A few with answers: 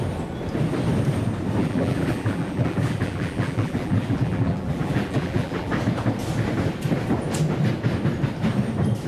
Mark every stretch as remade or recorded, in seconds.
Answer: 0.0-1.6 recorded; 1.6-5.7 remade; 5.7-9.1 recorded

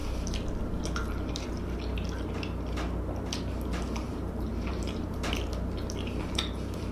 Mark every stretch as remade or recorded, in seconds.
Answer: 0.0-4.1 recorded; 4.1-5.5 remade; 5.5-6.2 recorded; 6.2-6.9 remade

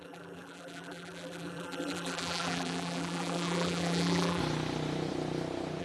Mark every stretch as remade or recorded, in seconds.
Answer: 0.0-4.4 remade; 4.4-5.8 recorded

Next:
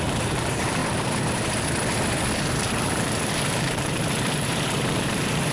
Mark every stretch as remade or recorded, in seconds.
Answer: 0.0-0.8 remade; 0.8-2.5 recorded; 2.5-5.5 remade